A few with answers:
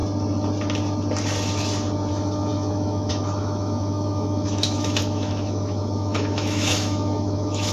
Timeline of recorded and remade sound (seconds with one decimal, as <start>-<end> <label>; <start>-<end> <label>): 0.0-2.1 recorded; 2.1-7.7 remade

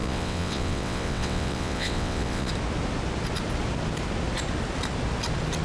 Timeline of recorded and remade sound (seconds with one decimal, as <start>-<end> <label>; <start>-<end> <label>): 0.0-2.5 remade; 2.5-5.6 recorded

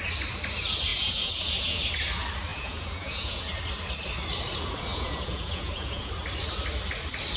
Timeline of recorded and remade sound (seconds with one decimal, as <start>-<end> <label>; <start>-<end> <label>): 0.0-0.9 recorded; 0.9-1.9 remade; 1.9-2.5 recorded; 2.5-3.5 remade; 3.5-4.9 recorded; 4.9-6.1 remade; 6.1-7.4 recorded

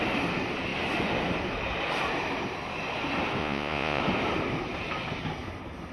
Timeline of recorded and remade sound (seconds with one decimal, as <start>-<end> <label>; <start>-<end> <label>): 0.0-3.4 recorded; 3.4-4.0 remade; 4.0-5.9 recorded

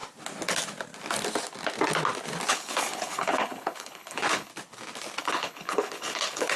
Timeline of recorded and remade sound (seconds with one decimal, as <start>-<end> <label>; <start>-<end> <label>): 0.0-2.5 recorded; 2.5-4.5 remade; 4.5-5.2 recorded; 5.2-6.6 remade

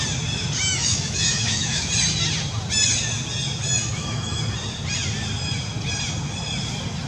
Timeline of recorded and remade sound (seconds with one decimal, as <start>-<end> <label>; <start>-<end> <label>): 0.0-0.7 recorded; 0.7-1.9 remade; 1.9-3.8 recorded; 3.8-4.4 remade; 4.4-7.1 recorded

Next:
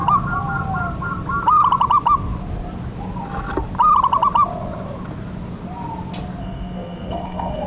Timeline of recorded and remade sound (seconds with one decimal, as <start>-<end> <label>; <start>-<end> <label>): 0.0-6.4 recorded; 6.4-7.7 remade